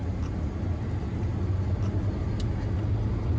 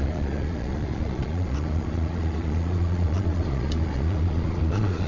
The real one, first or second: first